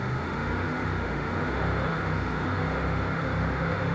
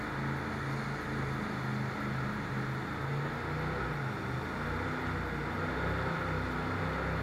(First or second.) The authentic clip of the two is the second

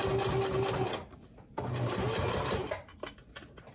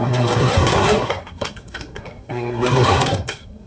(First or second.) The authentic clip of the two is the first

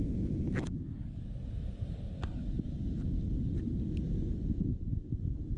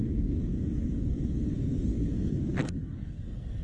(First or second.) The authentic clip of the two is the first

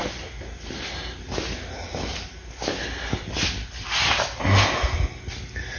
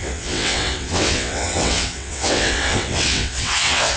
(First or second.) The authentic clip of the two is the first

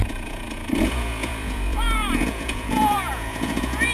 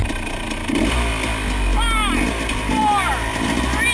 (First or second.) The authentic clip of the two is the second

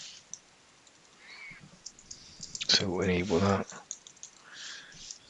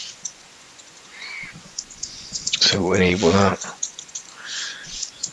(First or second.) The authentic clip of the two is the first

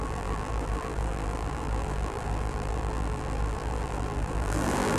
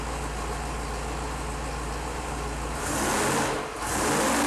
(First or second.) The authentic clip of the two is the second